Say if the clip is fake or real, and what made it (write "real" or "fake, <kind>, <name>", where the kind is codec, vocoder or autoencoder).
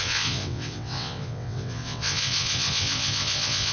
fake, vocoder, WaveNeXt